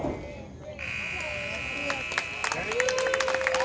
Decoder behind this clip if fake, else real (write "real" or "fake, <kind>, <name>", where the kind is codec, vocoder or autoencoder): real